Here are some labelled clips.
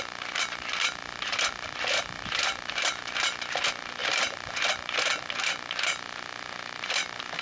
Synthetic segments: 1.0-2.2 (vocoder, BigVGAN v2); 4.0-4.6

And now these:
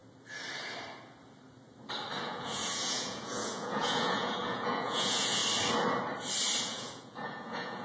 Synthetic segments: 2.2-5.4 (vocoder, Vocos); 6.6-7.8

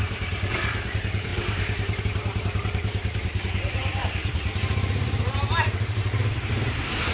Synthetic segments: 0.0-7.1 (vocoder, BigVGAN v2)

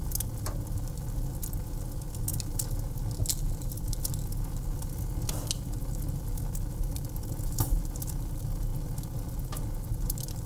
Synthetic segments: none